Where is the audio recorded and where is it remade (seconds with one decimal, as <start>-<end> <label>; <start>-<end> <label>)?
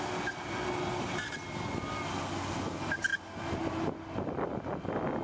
0.0-5.2 recorded